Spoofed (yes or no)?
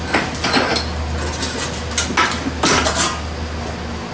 no